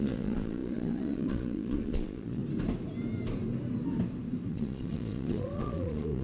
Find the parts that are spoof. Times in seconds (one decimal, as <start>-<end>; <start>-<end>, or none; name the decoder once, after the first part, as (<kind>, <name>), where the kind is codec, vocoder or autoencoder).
0.0-2.4 (vocoder, Vocos); 4.5-6.2